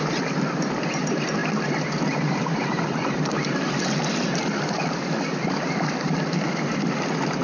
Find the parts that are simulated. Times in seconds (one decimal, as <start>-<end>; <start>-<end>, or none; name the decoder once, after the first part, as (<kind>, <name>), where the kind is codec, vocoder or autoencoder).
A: 1.4-3.3 (vocoder, BigVGAN v2); 4.4-7.4